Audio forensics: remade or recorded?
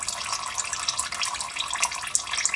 recorded